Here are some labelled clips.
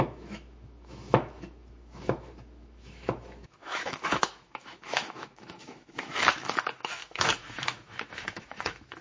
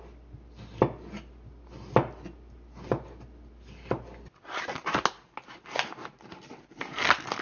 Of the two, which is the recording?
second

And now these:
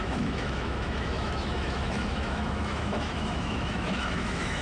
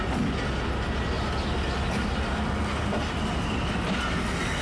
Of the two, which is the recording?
second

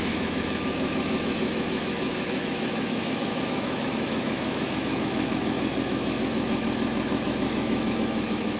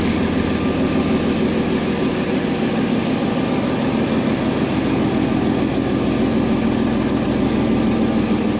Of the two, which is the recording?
second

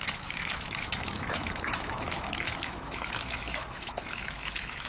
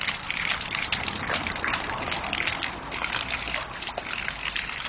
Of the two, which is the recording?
second